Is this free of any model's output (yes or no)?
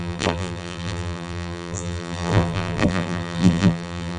no